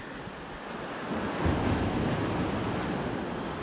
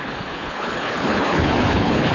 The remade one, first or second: second